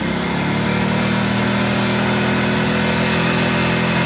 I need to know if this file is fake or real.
real